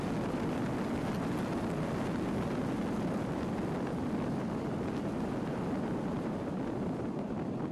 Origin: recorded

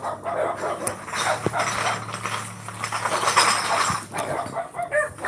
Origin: recorded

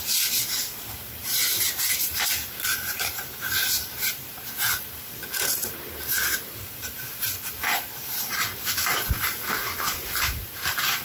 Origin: remade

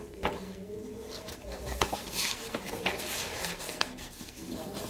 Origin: remade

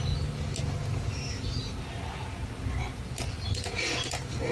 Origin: recorded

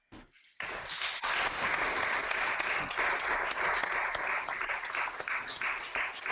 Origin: recorded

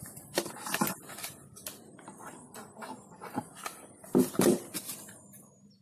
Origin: recorded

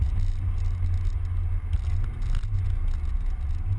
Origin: recorded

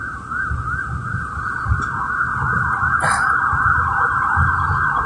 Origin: recorded